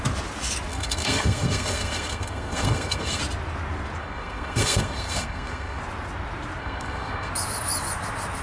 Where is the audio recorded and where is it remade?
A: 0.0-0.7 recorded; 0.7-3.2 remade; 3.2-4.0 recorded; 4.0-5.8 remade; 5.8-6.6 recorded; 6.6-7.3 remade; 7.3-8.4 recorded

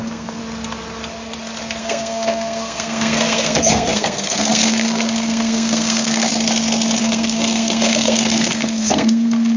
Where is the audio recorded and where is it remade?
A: 0.0-0.4 remade; 0.4-1.8 recorded; 1.8-6.3 remade; 6.3-7.0 recorded; 7.0-9.6 remade

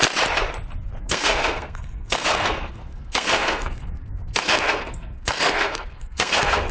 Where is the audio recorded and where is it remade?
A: 0.0-1.0 recorded; 1.0-6.7 remade

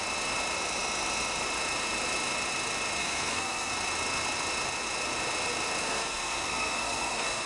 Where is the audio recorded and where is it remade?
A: 0.0-3.0 recorded; 3.0-3.7 remade; 3.7-5.8 recorded; 5.8-7.5 remade